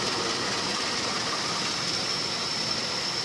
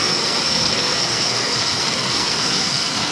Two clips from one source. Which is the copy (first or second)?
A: second